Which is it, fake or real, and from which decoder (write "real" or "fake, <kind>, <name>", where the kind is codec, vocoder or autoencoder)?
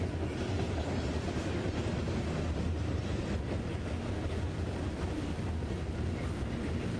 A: real